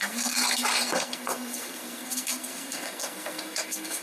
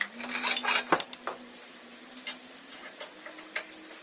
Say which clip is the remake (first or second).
first